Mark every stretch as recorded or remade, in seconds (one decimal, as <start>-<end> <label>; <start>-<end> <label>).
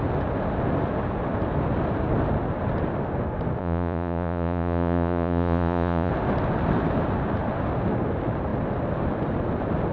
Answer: 0.0-3.6 recorded; 3.6-6.1 remade; 6.1-9.9 recorded